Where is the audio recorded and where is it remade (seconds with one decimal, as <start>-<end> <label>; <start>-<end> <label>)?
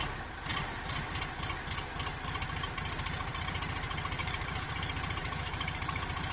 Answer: 0.0-4.2 recorded; 4.2-4.7 remade; 4.7-5.2 recorded; 5.2-6.3 remade